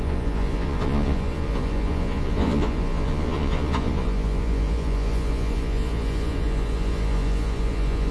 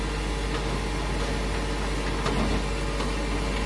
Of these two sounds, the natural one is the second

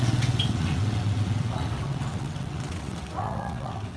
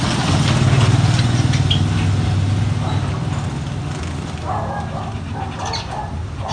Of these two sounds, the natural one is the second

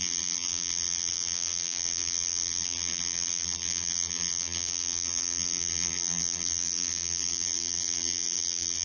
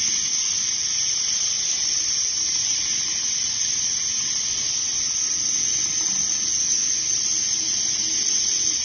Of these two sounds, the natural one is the second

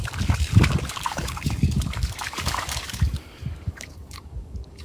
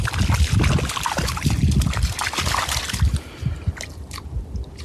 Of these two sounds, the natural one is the second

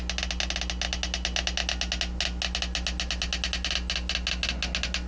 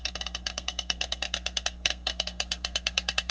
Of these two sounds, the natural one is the first